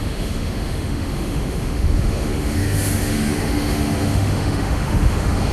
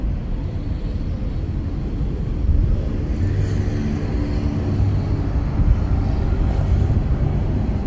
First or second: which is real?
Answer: second